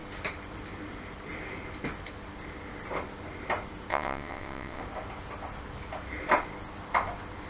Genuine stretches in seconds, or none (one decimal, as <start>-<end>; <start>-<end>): 0.0-3.9; 4.8-7.5